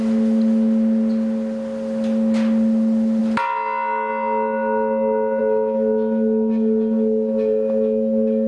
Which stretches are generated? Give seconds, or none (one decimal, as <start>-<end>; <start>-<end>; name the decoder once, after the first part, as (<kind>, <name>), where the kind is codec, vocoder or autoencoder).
none